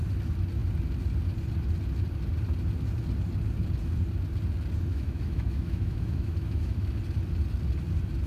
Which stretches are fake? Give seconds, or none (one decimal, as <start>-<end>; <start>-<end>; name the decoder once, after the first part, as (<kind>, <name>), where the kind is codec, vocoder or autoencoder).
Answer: 4.9-7.0 (autoencoder, DAC-VAE)